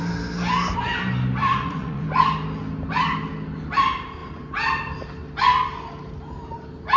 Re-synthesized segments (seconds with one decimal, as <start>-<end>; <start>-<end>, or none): 1.4-2.0